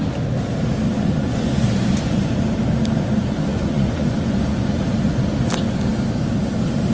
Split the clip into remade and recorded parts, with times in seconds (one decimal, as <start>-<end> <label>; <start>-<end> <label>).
0.0-0.9 recorded; 0.9-1.7 remade; 1.7-3.5 recorded; 3.5-4.8 remade; 4.8-6.9 recorded